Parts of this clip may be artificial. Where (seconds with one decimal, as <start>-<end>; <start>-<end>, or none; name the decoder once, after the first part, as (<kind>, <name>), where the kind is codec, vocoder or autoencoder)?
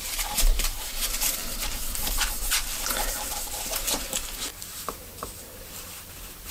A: 0.0-2.5 (vocoder, BigVGAN v2); 3.3-6.5